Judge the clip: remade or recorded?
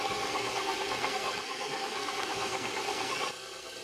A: remade